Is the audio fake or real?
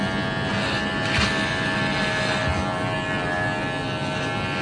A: real